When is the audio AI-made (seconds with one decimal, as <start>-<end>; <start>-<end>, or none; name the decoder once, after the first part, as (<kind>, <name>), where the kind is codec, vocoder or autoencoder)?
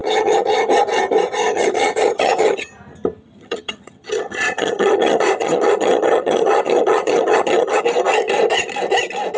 0.0-0.7 (vocoder, HiFi-GAN); 1.4-2.7; 3.2-7.8